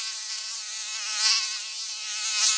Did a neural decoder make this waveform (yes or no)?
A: no